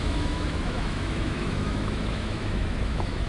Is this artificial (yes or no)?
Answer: yes